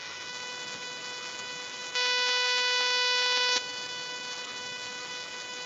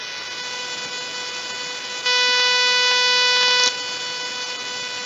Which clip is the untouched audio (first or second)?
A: second